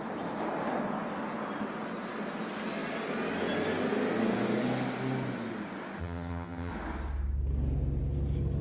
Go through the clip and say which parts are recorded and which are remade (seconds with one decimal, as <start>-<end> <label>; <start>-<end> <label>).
0.0-6.0 recorded; 6.0-6.7 remade; 6.7-8.6 recorded